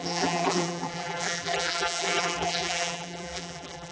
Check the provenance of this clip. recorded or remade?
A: remade